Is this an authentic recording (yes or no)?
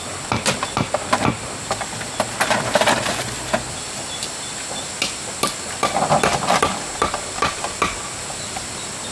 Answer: yes